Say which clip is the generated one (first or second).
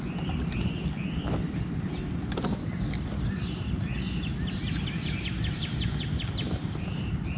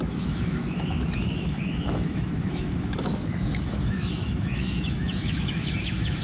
second